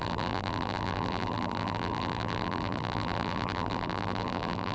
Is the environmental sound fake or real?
fake